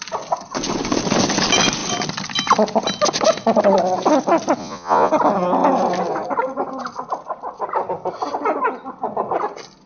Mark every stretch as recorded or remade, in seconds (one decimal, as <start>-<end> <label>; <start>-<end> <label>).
0.0-4.6 recorded; 4.6-5.1 remade; 5.1-9.9 recorded